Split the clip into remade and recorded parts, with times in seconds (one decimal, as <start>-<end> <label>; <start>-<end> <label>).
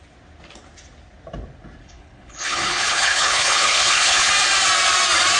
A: 0.0-1.8 recorded; 1.8-4.3 remade; 4.3-5.4 recorded